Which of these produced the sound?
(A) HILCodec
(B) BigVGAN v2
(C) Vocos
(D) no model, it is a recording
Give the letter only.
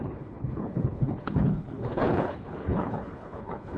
A